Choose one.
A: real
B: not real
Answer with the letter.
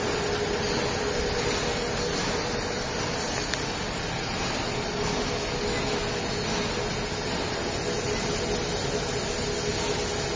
A